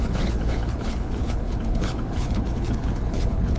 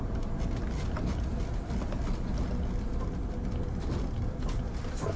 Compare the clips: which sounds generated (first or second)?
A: first